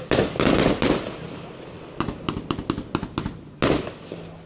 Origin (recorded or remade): recorded